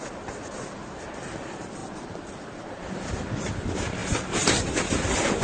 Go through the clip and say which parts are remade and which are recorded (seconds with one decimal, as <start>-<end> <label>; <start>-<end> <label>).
0.0-5.4 recorded